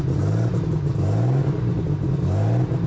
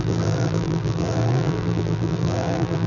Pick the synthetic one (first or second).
second